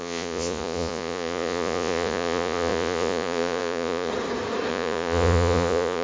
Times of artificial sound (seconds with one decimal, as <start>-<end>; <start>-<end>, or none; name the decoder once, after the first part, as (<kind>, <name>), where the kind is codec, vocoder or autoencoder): 0.0-4.1 (vocoder, Vocos); 4.7-6.0